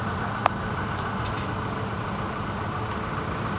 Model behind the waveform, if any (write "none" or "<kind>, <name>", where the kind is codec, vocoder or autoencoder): none